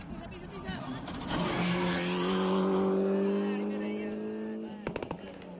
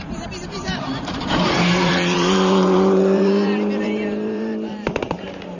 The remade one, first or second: second